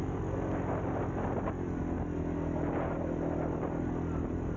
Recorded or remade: recorded